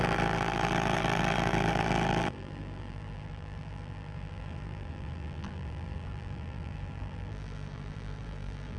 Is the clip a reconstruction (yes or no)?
yes